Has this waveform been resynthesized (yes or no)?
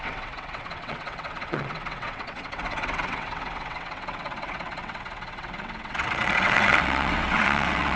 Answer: yes